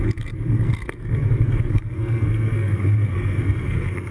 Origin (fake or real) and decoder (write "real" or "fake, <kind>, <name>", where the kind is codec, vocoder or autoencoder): fake, codec, SNAC